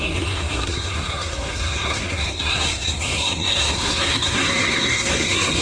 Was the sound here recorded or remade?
remade